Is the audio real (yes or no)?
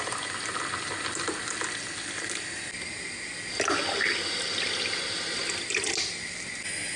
yes